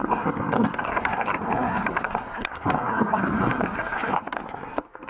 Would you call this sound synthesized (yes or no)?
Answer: yes